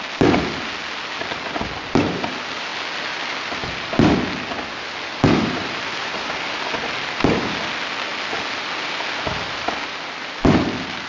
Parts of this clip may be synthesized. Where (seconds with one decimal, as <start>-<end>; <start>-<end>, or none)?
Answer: none